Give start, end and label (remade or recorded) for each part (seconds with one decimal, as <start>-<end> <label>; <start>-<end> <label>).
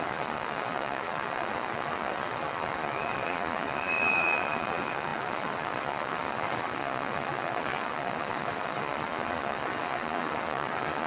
0.0-11.1 remade